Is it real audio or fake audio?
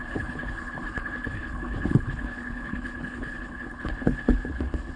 fake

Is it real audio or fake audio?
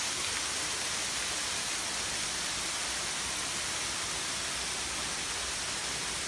real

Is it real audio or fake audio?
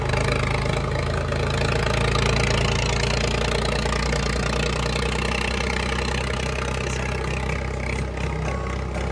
real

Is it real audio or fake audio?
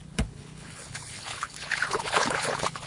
fake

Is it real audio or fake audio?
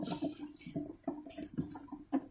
real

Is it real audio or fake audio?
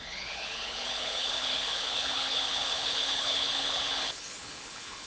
fake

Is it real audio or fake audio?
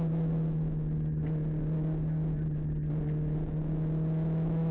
real